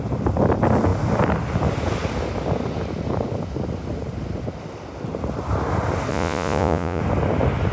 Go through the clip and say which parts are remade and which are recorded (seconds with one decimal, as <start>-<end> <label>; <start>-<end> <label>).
0.0-6.1 recorded; 6.1-7.0 remade; 7.0-7.7 recorded